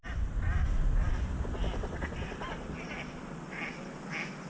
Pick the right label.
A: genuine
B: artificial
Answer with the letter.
A